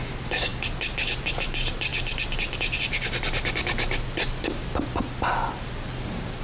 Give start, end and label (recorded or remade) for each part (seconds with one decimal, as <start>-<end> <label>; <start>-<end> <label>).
0.0-6.4 recorded